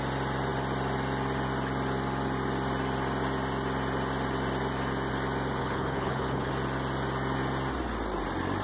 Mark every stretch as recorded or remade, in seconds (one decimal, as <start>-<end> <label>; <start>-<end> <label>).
0.0-5.6 recorded; 5.6-6.5 remade; 6.5-8.6 recorded